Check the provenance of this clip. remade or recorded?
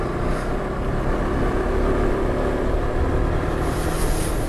recorded